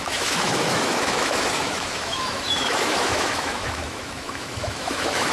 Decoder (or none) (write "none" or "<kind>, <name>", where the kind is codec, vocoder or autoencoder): autoencoder, DAC-VAE